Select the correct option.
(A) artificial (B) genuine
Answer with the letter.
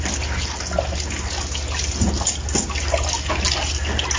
B